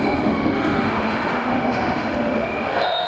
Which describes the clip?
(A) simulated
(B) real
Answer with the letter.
A